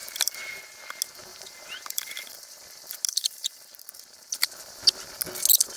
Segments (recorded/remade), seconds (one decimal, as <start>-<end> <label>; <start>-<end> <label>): 0.0-0.6 remade; 0.6-1.3 recorded; 1.3-2.5 remade; 2.5-3.1 recorded; 3.1-4.5 remade; 4.5-5.8 recorded